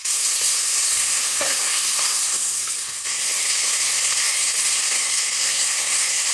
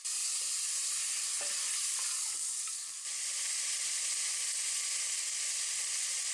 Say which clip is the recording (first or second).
second